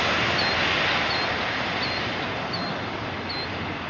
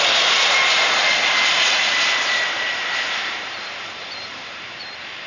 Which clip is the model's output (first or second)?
second